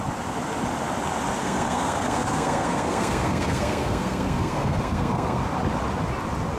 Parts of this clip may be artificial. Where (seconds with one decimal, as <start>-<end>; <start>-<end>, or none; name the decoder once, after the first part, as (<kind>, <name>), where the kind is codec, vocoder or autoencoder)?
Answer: 1.4-5.4 (codec, SNAC)